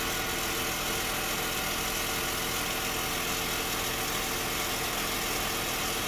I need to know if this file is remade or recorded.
recorded